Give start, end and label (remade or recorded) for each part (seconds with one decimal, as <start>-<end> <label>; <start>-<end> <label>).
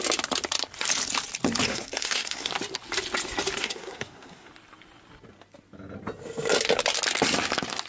0.0-1.7 recorded; 1.7-2.5 remade; 2.5-3.6 recorded; 3.6-4.5 remade; 4.5-7.9 recorded